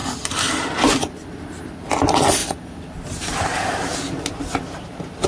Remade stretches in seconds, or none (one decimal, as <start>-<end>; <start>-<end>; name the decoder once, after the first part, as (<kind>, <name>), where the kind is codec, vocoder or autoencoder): none